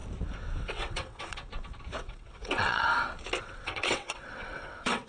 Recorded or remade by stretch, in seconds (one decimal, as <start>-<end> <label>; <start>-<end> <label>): 0.0-0.6 recorded; 0.6-1.4 remade; 1.4-2.0 recorded; 2.0-2.9 remade; 2.9-3.4 recorded; 3.4-5.1 remade

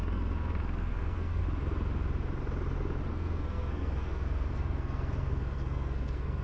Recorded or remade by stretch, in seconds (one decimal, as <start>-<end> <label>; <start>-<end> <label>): 0.0-1.4 remade; 1.4-3.1 recorded; 3.1-6.4 remade